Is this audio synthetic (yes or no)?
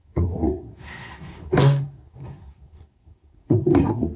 yes